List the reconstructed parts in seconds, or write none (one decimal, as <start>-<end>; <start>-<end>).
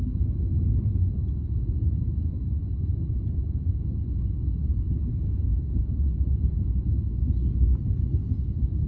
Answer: 4.7-6.9